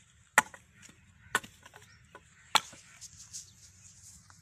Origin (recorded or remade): recorded